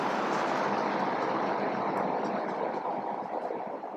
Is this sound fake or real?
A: real